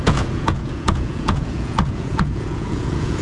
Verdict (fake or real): fake